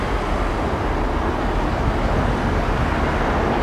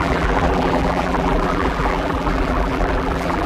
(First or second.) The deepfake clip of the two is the second